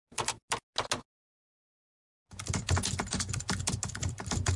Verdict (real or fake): real